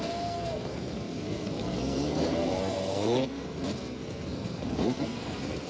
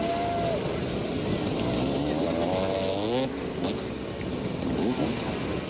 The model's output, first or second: first